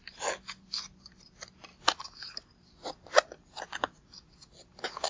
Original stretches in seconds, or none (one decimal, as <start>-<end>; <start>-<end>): 0.0-5.1